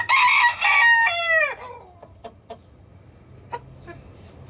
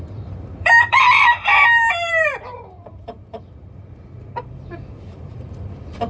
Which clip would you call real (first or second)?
first